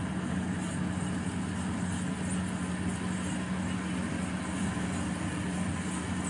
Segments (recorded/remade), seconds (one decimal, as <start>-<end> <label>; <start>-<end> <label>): 0.0-6.3 recorded